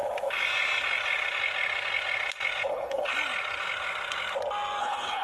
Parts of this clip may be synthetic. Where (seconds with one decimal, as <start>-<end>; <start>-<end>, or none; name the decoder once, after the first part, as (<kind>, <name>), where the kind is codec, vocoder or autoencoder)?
2.7-3.1 (codec, HILCodec); 4.8-5.2